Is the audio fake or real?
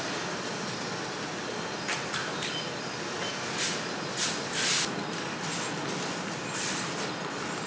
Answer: real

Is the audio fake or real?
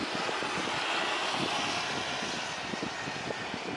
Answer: real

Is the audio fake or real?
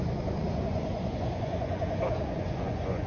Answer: fake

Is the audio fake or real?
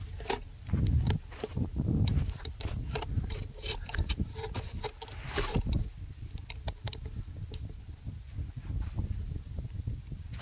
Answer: real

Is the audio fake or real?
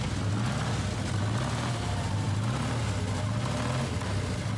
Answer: real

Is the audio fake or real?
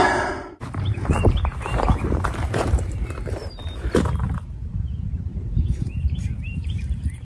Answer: fake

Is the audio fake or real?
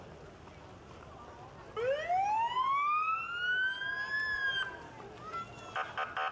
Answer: real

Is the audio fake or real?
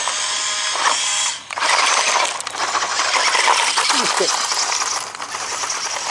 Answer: real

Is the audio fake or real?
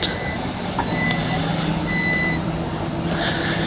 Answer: real